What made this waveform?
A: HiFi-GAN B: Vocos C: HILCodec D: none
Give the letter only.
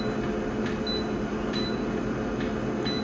D